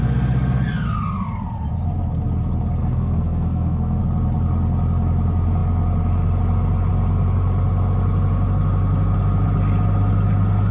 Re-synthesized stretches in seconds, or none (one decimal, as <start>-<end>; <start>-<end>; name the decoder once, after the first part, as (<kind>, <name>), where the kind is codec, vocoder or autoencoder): 2.8-4.0 (codec, SNAC)